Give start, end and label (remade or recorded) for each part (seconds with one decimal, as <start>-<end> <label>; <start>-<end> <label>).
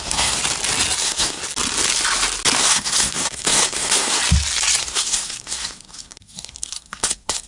0.0-0.4 remade; 0.4-1.0 recorded; 1.0-1.4 remade; 1.4-2.6 recorded; 2.6-4.2 remade; 4.2-4.8 recorded; 4.8-7.5 remade